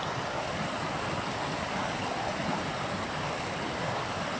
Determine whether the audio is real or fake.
real